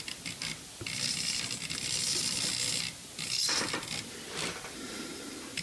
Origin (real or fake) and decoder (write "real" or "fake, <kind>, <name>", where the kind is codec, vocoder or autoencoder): real